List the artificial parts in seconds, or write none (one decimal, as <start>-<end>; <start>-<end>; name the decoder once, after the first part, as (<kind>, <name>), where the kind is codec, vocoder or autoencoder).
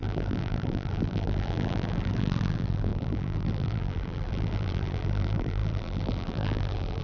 0.0-7.0 (vocoder, BigVGAN v2)